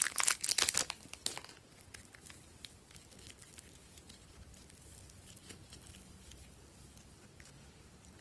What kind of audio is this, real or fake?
real